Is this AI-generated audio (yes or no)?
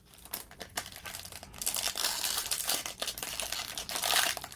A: no